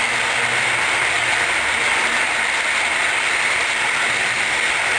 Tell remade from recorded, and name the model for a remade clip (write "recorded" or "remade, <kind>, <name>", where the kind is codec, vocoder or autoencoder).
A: recorded